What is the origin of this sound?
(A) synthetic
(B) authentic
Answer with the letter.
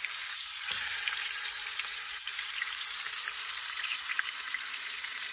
A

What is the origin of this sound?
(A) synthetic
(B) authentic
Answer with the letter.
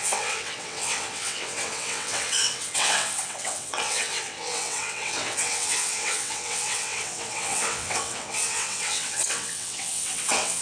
A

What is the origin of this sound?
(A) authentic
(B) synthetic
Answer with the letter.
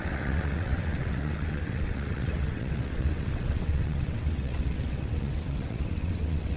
B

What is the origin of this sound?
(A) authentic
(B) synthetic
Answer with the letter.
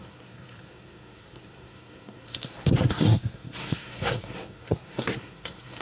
B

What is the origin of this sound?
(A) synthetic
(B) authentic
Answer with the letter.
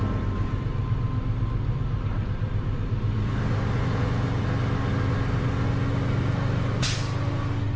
B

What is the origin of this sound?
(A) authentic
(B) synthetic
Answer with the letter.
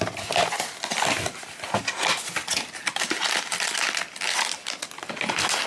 A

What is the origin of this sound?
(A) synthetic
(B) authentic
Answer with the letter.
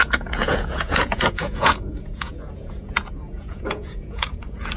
A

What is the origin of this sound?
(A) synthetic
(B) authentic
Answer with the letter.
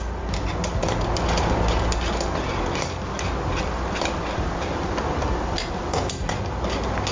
B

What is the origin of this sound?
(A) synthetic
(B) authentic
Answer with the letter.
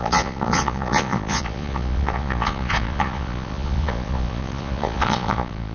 A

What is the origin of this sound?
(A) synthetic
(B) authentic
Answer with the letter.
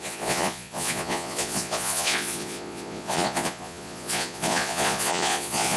A